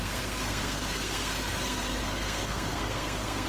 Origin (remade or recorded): remade